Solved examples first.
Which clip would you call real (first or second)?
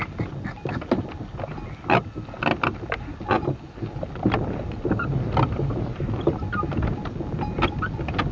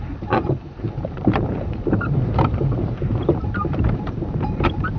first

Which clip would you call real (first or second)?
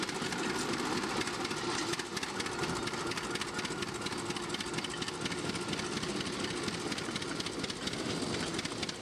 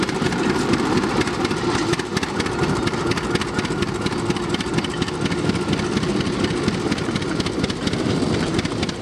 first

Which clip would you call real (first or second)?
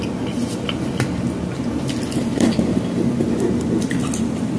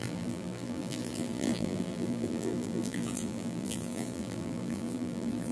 first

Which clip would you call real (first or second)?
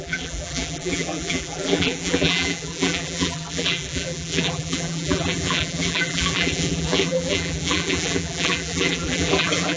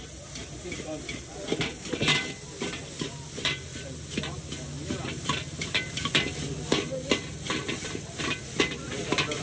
second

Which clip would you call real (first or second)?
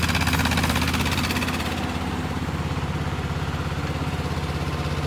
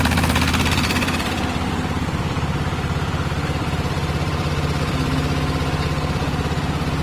first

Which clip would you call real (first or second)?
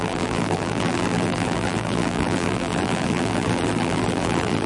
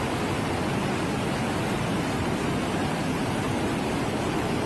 second